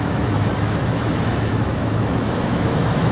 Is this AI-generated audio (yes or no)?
yes